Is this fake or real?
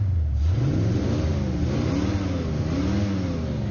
real